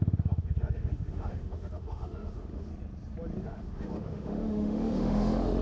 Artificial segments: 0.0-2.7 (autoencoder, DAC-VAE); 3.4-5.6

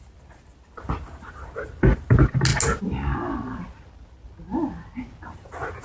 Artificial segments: none

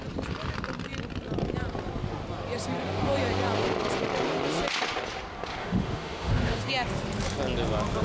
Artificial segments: 5.6-6.7 (autoencoder, DAC-VAE)

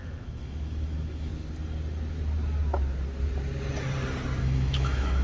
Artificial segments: 0.0-1.3 (autoencoder, DAC-VAE); 4.4-5.2